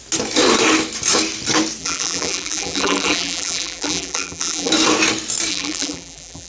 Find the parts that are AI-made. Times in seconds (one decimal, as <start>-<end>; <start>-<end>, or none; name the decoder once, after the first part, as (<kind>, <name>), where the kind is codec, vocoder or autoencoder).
1.8-4.7 (vocoder, BigVGAN v2); 5.5-6.5